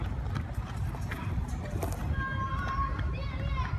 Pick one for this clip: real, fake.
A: real